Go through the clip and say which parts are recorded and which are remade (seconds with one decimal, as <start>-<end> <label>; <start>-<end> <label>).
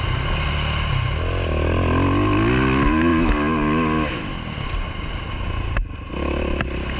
0.0-7.0 recorded